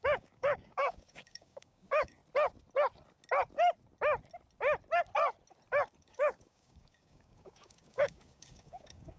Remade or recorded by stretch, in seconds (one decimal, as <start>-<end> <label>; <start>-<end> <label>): 0.0-2.2 remade; 2.2-6.0 recorded; 6.0-9.2 remade